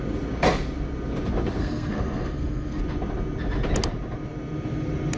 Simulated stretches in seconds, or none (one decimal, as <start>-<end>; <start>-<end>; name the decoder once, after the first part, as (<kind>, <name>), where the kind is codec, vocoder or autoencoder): 1.6-2.8 (codec, SNAC)

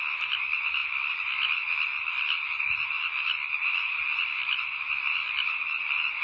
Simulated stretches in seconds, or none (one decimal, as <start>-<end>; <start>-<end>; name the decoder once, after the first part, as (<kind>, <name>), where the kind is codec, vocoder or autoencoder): none

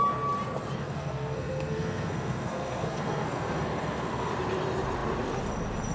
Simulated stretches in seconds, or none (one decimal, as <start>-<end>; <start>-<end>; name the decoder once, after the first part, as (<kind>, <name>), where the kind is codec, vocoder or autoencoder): 0.8-4.3 (codec, SNAC)